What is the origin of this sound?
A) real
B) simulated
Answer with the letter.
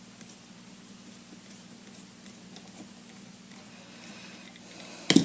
A